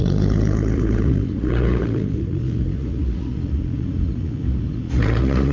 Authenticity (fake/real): fake